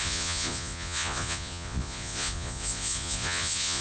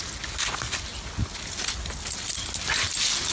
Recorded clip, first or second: second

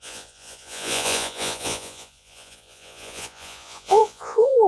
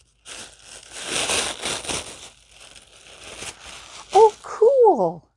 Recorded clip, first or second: second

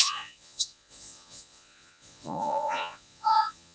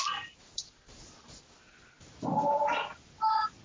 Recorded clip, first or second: second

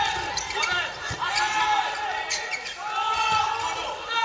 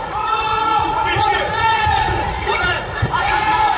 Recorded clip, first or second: first